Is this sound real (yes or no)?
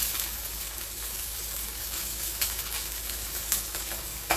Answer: no